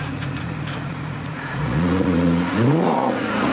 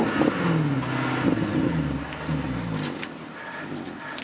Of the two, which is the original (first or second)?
second